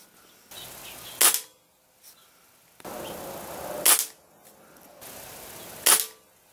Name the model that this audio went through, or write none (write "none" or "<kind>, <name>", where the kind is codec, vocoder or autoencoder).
none